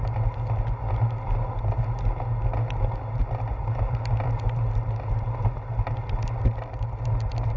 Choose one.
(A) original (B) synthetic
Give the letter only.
A